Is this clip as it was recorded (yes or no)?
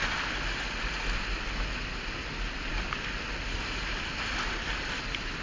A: yes